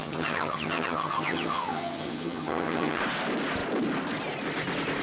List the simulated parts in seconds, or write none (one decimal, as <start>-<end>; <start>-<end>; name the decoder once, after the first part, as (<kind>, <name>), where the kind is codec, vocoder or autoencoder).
0.0-3.0 (vocoder, HiFi-GAN)